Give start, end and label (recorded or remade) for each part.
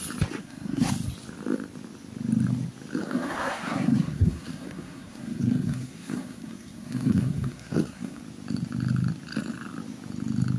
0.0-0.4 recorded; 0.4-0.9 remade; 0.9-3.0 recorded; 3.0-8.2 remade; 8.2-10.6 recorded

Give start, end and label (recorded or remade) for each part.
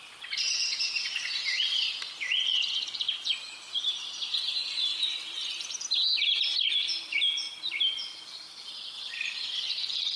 0.0-10.2 recorded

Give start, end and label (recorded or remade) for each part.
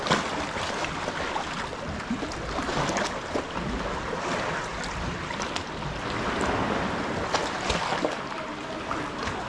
0.0-9.5 recorded